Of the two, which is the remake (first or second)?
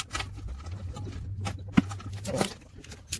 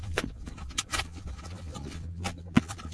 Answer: second